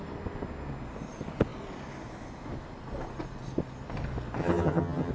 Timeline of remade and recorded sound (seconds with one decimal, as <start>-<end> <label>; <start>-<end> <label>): 0.0-4.4 recorded; 4.4-5.1 remade